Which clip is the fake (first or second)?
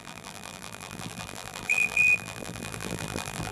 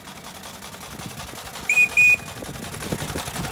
first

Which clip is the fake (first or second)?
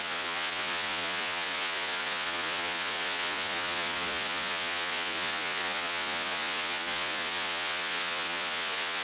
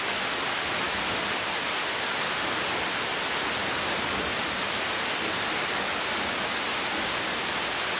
first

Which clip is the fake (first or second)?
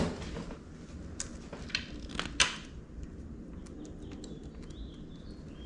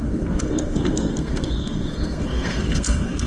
second